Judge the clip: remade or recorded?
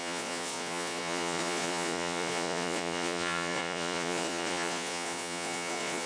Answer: remade